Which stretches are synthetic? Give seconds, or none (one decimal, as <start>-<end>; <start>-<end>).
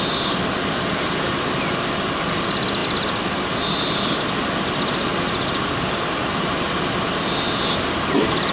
5.1-6.4